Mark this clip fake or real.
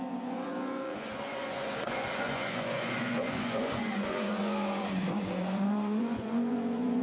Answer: fake